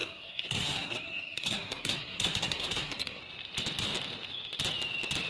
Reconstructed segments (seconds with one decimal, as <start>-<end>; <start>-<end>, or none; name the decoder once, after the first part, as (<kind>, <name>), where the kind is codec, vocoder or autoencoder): 0.0-3.2 (codec, SNAC)